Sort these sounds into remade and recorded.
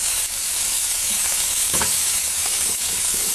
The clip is remade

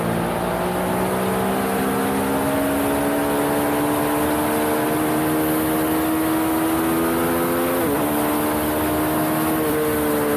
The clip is recorded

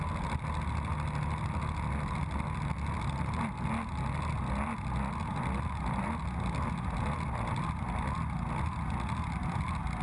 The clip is recorded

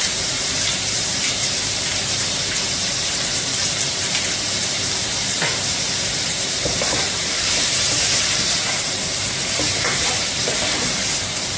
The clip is remade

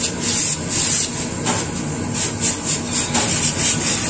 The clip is recorded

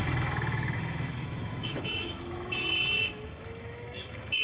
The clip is remade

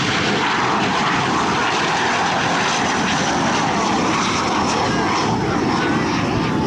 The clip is recorded